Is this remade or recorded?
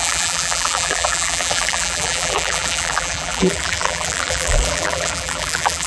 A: remade